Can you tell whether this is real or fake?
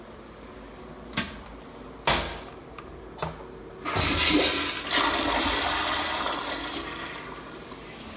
real